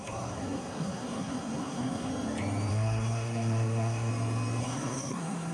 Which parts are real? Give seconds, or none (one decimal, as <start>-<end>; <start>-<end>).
2.1-2.7; 4.1-4.6